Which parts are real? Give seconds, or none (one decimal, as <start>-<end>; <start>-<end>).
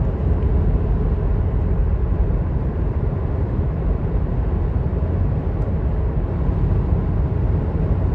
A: 0.0-1.8; 4.2-8.1